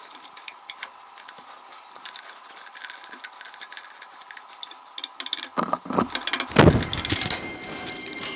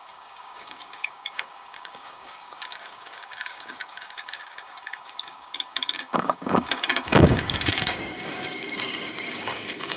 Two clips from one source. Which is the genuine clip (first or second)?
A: first